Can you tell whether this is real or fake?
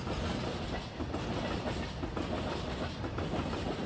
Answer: real